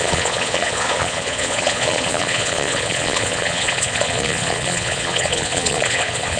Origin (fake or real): fake